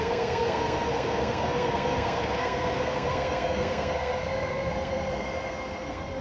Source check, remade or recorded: remade